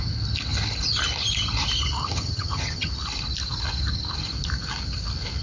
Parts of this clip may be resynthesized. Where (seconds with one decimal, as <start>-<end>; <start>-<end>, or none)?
2.0-2.9